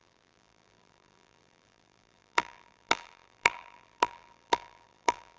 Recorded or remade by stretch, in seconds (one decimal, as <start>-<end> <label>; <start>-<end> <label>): 0.0-5.4 remade